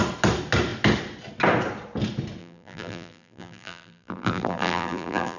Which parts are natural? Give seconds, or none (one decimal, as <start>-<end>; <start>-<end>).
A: 0.0-2.4